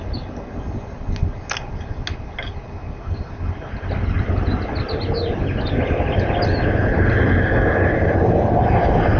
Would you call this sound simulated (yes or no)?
no